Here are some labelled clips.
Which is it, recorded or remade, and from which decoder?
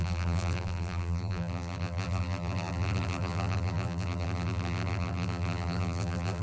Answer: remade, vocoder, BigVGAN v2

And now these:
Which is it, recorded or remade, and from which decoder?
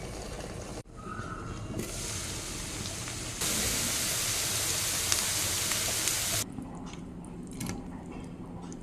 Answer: recorded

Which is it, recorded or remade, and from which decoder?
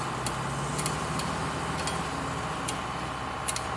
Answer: recorded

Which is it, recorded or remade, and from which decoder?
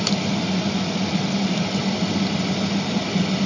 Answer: recorded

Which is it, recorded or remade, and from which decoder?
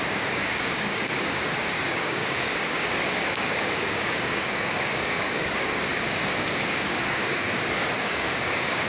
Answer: remade, codec, DAC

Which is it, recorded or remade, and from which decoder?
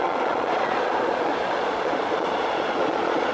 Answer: remade, vocoder, Vocos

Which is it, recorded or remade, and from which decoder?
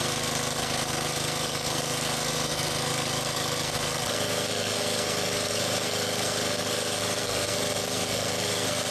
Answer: remade, codec, SNAC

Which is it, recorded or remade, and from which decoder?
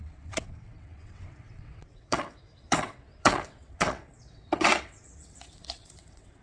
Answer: remade, vocoder, WaveNeXt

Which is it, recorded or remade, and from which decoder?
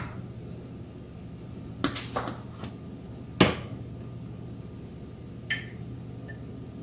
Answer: recorded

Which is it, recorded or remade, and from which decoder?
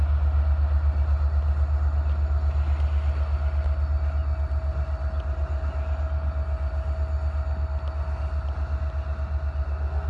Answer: recorded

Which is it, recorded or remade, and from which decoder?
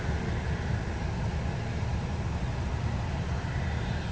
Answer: recorded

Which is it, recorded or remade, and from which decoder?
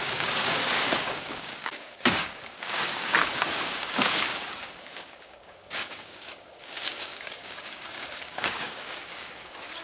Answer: remade, codec, DAC